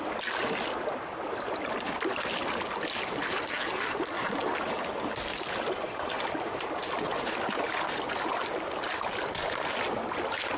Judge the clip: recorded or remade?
recorded